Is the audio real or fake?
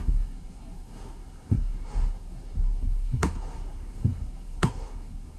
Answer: fake